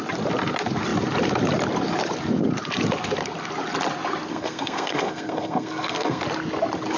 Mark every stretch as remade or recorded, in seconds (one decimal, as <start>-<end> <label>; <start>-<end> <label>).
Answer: 0.0-4.3 recorded; 4.3-6.2 remade; 6.2-7.0 recorded